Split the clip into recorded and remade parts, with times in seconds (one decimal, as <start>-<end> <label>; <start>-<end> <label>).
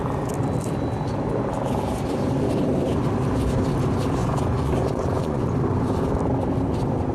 0.0-4.2 recorded; 4.2-5.5 remade; 5.5-7.1 recorded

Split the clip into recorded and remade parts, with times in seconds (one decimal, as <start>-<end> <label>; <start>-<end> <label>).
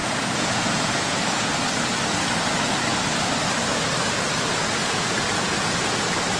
0.0-1.2 remade; 1.2-4.8 recorded; 4.8-6.0 remade; 6.0-6.4 recorded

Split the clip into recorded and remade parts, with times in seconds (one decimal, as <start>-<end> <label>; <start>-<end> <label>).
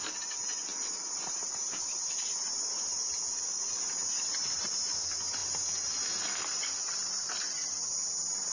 0.0-8.5 recorded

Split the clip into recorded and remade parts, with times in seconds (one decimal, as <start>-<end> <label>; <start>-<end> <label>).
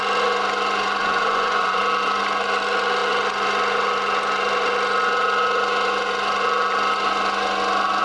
0.0-1.0 recorded; 1.0-1.8 remade; 1.8-8.0 recorded